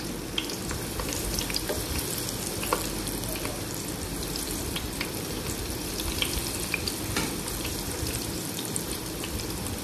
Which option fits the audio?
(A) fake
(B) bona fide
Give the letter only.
A